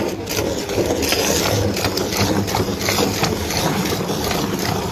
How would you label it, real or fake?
real